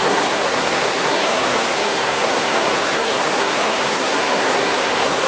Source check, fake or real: fake